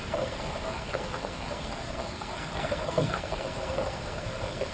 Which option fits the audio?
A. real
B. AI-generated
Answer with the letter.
B